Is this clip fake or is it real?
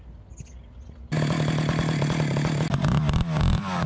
real